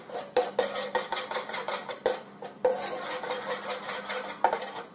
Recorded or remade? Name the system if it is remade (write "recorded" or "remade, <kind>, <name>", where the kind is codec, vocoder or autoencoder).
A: recorded